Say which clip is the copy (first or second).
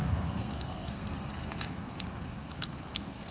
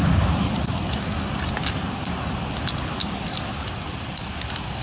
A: first